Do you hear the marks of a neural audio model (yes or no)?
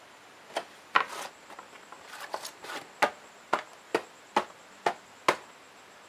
no